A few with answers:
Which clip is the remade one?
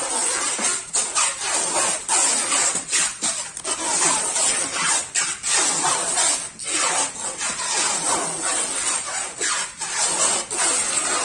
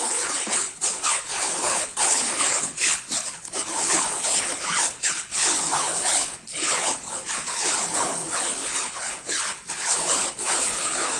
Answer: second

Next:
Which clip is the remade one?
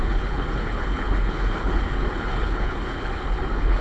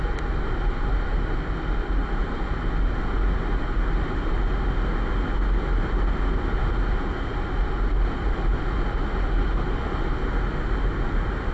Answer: first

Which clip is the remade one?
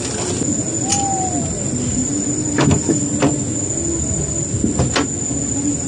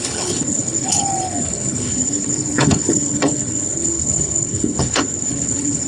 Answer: second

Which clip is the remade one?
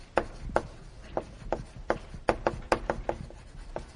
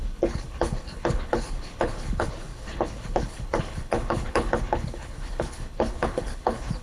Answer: second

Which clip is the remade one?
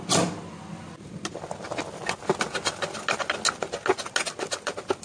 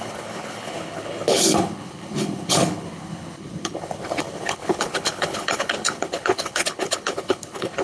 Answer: second